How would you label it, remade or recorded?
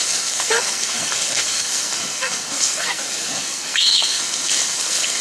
remade